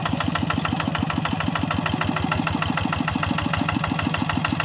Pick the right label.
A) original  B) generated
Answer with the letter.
A